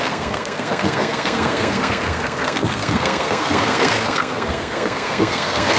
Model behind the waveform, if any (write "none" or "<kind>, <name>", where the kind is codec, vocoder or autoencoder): codec, SNAC